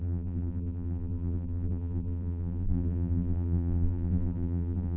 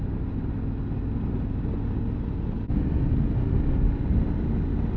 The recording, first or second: second